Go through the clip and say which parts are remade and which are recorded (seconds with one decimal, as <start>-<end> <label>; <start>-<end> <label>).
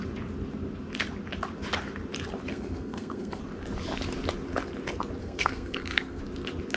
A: 0.0-2.5 recorded; 2.5-3.4 remade; 3.4-5.2 recorded; 5.2-6.2 remade; 6.2-6.8 recorded